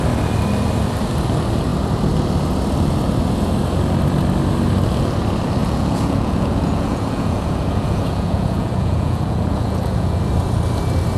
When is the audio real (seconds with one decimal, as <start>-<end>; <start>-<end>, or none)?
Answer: 0.0-5.6; 10.2-11.2